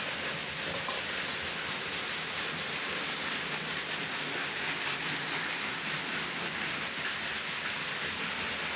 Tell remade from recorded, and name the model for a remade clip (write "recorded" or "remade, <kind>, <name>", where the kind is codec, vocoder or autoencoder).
recorded